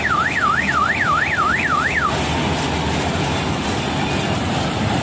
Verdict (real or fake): real